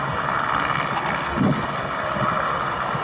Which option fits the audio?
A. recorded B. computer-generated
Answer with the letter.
A